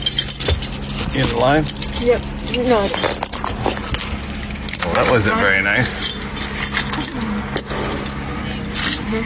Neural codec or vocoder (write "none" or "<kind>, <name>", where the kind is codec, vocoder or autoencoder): none